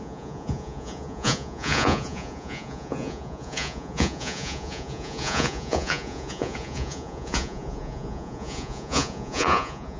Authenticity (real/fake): fake